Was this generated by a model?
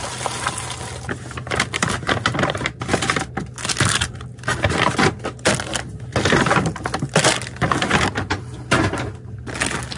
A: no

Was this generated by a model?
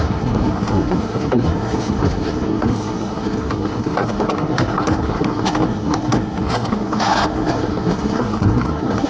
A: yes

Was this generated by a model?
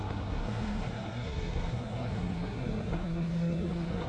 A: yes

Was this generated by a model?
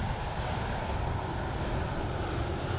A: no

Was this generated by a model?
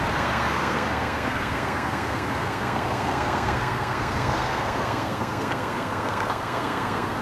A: yes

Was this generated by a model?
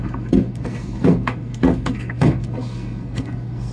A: yes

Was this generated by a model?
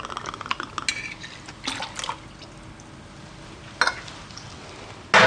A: no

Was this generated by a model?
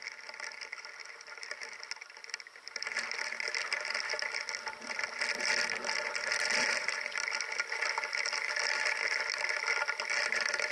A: no